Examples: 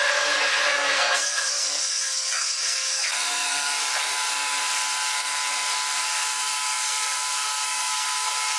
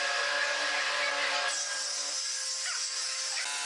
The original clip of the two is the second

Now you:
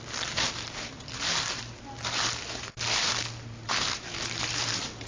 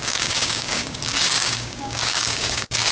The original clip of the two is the first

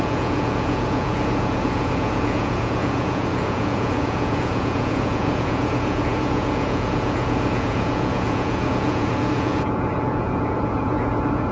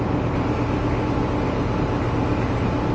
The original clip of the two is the second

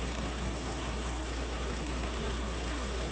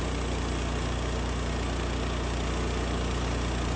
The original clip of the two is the second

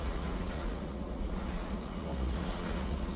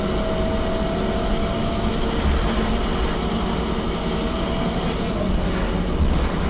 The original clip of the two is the second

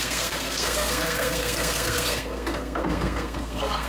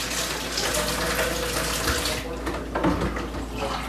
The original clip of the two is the second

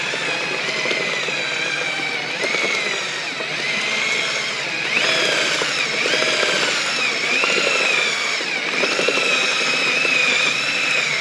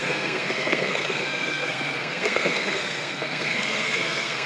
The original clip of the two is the first